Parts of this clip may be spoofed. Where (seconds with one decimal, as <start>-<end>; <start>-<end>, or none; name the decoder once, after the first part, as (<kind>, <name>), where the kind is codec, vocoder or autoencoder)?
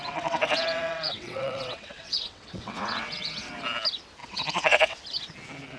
0.0-3.5 (vocoder, WaveNeXt); 4.2-5.0